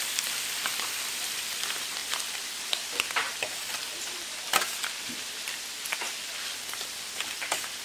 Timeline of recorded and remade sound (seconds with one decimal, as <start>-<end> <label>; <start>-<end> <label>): 0.0-2.0 remade; 2.0-2.6 recorded; 2.6-7.8 remade